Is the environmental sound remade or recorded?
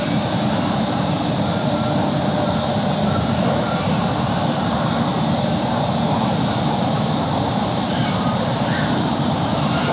remade